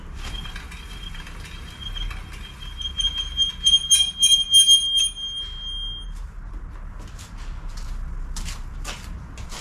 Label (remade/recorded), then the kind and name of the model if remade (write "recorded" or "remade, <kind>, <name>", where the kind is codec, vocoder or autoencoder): recorded